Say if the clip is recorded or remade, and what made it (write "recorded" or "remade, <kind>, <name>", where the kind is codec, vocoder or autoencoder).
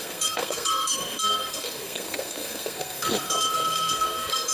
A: remade, codec, SNAC